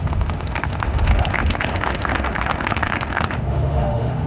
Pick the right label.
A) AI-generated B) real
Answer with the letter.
A